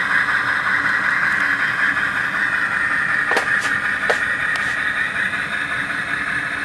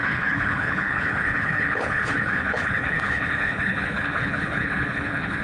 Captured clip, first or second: first